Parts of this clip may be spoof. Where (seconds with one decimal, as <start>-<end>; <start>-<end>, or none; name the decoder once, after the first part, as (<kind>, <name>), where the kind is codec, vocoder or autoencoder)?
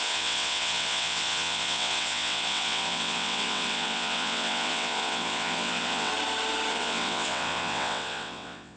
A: 0.0-6.1 (vocoder, WaveNeXt); 6.7-8.8